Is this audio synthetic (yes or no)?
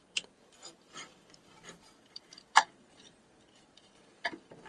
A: yes